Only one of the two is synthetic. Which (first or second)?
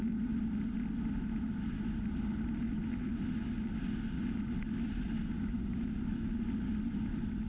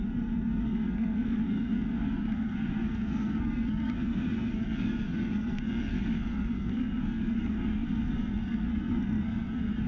second